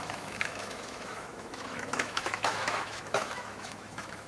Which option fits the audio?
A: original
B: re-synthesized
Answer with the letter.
B